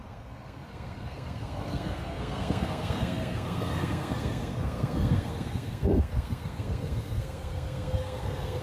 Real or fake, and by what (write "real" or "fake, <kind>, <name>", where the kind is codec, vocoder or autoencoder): fake, codec, SNAC